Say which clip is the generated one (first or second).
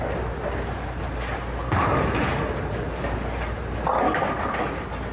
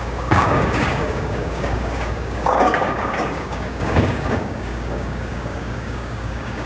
second